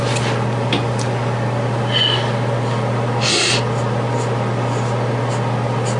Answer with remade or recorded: recorded